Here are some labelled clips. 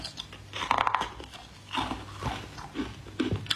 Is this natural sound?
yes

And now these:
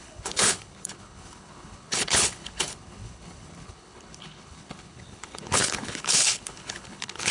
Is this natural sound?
no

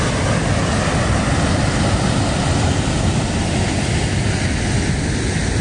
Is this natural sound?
yes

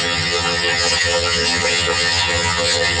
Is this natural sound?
no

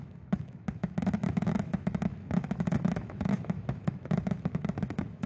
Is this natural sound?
no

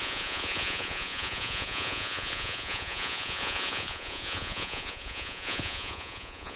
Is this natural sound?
no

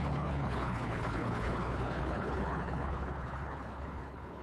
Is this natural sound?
no